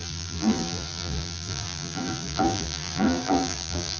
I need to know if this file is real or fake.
fake